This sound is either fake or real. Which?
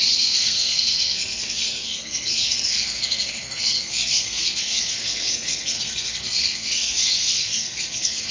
fake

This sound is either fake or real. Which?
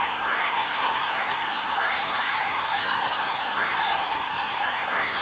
fake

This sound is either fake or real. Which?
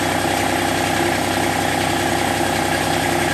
real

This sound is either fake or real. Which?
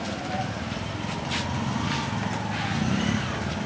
real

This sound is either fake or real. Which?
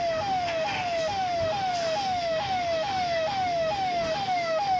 fake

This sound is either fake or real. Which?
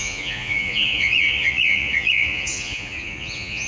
fake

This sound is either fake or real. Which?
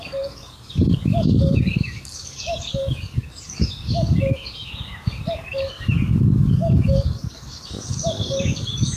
fake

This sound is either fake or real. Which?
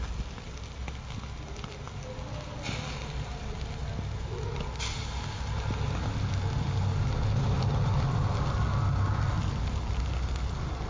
real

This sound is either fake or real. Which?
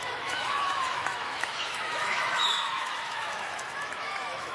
fake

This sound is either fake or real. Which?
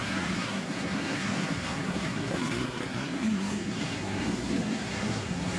fake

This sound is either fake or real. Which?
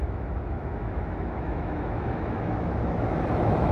fake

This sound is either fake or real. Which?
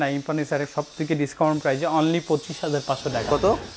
real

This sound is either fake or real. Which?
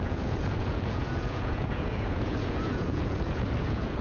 fake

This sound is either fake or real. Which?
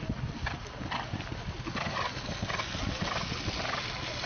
real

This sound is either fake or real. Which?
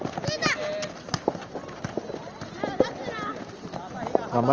real